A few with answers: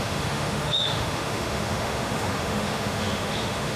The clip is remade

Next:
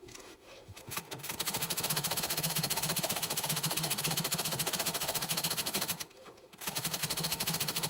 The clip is remade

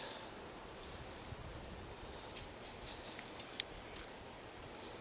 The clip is recorded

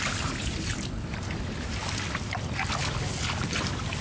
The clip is recorded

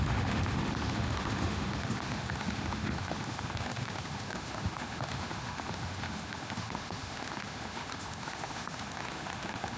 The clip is remade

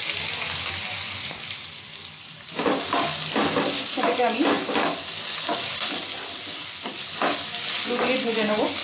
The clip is recorded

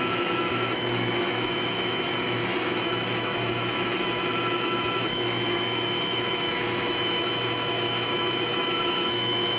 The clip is remade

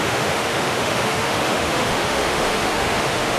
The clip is remade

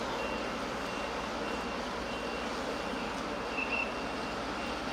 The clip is recorded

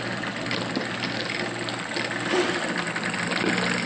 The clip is recorded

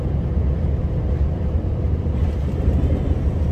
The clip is recorded